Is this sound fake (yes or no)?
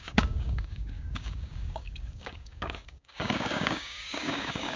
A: yes